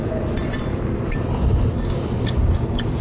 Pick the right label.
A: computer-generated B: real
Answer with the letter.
B